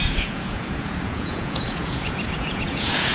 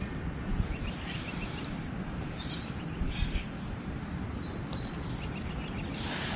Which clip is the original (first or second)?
second